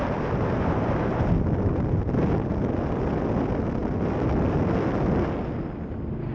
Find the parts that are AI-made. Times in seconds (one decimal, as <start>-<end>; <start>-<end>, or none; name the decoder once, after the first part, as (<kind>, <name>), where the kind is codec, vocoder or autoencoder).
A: none

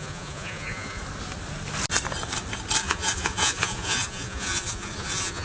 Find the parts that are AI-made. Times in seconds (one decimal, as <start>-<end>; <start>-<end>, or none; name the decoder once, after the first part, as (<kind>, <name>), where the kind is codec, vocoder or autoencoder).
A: 0.0-1.0 (vocoder, Vocos); 2.8-5.4

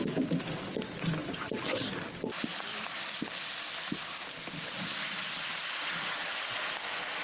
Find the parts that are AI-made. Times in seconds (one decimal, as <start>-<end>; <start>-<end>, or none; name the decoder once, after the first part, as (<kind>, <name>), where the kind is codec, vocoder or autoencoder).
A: 2.7-3.3 (vocoder, BigVGAN v2)

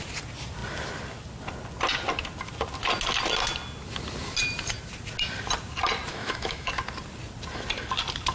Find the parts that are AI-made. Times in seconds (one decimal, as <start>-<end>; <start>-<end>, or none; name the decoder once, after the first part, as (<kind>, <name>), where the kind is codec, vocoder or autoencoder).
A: 6.1-6.7 (autoencoder, DAC-VAE)

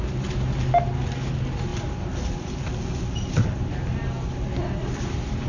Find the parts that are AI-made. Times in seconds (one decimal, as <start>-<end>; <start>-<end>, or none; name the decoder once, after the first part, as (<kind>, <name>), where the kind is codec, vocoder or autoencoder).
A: none

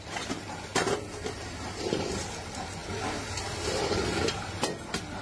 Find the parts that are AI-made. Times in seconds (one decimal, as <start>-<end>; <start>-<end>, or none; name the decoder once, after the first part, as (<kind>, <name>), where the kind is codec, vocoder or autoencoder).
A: none

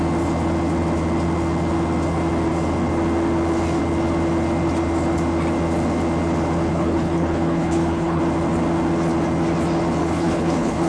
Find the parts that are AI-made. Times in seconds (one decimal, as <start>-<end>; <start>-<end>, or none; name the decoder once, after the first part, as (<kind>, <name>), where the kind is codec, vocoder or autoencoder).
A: 6.7-8.2 (codec, HILCodec); 10.0-10.9